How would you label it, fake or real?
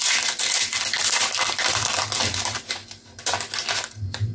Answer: real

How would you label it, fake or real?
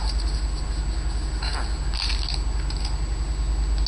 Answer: real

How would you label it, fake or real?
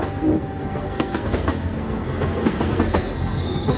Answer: fake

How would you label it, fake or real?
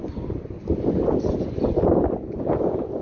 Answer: real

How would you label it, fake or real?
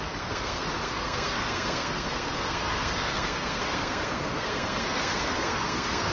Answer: fake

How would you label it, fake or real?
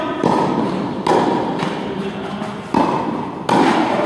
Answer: real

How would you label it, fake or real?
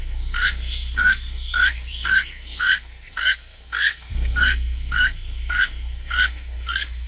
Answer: fake